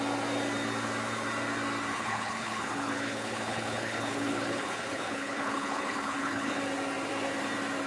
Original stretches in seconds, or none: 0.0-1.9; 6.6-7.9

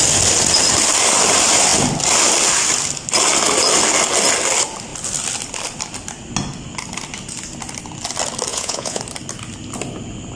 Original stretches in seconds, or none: 0.0-8.5; 9.0-10.4

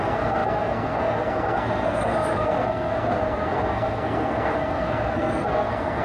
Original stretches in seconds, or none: none